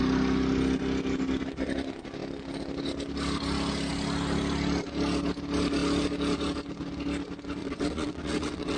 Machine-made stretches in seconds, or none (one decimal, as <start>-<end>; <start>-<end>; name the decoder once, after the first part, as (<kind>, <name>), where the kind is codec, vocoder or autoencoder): 7.6-8.8 (vocoder, WaveNeXt)